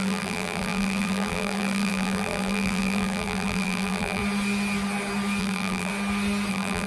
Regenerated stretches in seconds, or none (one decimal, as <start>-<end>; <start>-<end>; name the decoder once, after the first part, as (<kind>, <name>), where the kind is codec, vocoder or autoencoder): 0.0-4.2 (vocoder, BigVGAN v2); 5.4-5.9; 6.5-6.9

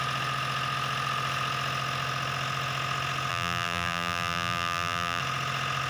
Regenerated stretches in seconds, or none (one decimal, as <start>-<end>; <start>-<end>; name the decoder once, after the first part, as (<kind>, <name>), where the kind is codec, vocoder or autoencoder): 3.3-5.2 (vocoder, BigVGAN v2)

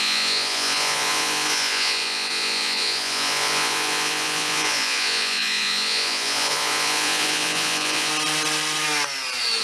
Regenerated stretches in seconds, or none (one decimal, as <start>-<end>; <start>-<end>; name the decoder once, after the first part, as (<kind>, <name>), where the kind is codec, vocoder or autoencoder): 0.0-8.1 (vocoder, Vocos)

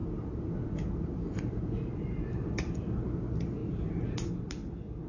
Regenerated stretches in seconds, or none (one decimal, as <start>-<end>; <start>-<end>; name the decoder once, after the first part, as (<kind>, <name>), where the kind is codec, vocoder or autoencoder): 0.0-3.1 (vocoder, BigVGAN v2)

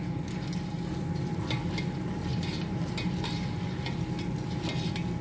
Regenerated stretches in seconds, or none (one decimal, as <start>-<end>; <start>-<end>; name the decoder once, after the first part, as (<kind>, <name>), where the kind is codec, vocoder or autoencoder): none

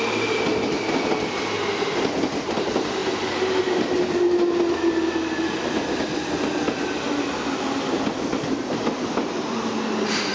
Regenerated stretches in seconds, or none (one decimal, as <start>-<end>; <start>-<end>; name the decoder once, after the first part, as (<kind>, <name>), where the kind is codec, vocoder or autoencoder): none

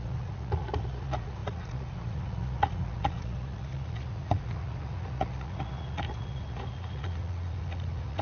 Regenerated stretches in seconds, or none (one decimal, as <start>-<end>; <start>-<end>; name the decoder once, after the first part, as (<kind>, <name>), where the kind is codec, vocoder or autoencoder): 0.0-8.2 (vocoder, Vocos)